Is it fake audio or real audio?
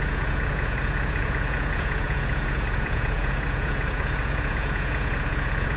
fake